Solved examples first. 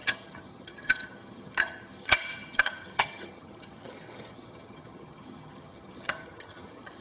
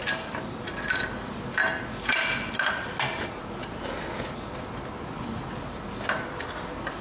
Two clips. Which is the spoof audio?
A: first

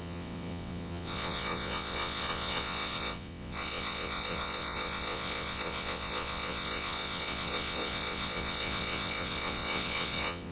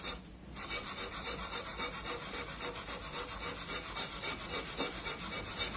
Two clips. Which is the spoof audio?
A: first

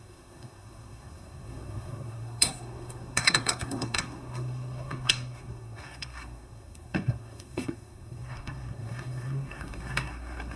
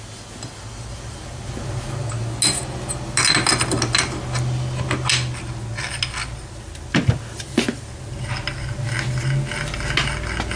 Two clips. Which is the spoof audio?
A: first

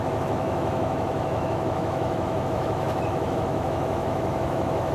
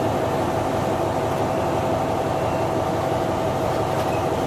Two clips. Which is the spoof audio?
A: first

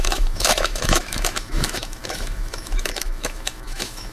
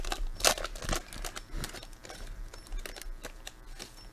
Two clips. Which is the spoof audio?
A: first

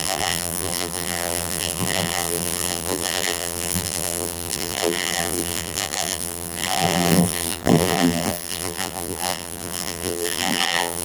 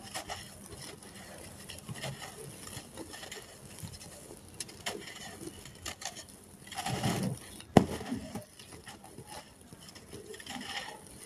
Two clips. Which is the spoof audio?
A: first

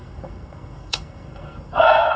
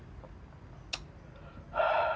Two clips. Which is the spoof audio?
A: first